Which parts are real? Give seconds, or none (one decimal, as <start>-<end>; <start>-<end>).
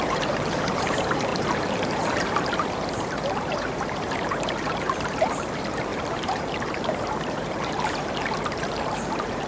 none